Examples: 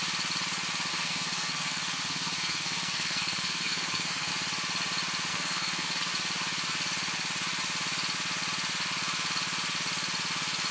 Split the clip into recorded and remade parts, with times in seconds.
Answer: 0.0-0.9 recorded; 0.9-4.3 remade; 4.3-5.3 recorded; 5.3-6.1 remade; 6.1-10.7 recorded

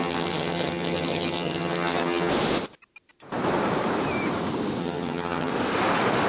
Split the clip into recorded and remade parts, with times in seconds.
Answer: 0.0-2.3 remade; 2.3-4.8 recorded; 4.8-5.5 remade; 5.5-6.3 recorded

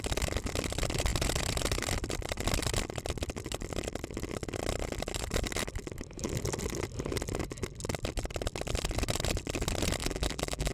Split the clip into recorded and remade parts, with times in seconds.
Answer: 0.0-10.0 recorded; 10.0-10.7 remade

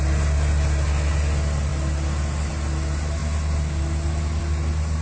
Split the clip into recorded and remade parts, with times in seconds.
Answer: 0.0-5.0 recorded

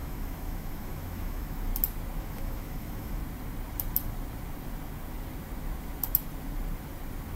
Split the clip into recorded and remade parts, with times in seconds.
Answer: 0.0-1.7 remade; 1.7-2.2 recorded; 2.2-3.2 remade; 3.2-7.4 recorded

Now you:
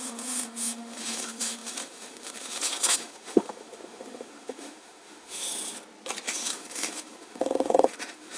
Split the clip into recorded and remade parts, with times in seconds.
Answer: 0.0-5.5 remade; 5.5-6.3 recorded; 6.3-8.4 remade

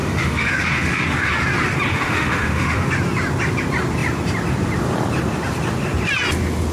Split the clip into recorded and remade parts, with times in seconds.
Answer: 0.0-1.3 remade; 1.3-1.9 recorded; 1.9-2.9 remade; 2.9-6.7 recorded

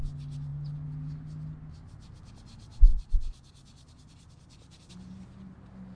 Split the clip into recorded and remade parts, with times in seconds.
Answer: 0.0-2.9 recorded; 2.9-4.9 remade; 4.9-6.0 recorded